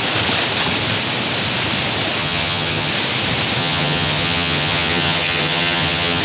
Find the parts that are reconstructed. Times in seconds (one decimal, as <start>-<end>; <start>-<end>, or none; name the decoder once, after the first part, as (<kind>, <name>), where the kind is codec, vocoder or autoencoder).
2.2-2.9 (vocoder, HiFi-GAN); 3.6-6.2